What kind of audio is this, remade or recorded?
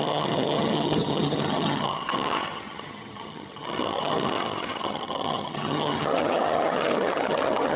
remade